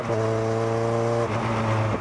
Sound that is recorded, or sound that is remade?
recorded